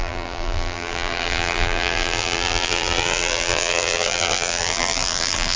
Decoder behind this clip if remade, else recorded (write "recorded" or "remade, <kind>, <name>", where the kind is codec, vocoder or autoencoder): remade, vocoder, BigVGAN v2